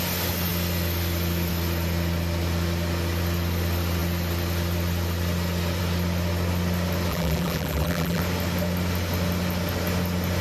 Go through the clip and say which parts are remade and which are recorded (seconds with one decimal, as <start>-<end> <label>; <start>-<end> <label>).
0.0-7.1 recorded; 7.1-8.2 remade; 8.2-10.4 recorded